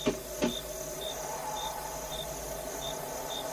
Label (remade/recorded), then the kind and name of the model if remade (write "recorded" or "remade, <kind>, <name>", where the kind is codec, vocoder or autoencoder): recorded